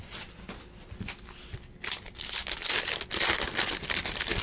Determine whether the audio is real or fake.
real